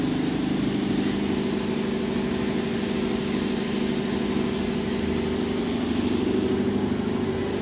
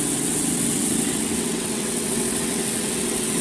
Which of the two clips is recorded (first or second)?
first